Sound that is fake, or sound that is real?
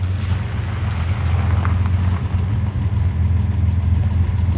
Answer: real